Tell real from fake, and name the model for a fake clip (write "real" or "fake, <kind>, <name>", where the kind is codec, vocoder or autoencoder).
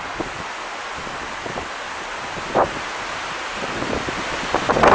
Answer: real